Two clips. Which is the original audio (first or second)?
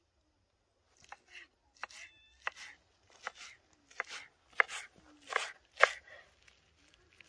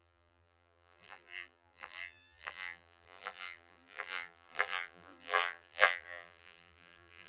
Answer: first